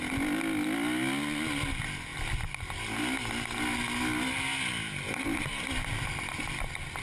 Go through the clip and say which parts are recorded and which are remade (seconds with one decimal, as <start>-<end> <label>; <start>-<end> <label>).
0.0-7.0 recorded